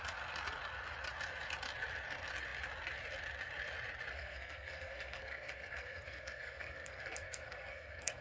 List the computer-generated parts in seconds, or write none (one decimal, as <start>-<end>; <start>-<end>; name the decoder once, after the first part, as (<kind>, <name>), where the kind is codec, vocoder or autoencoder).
4.1-8.2 (codec, SNAC)